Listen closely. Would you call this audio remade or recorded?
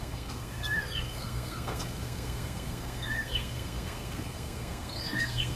remade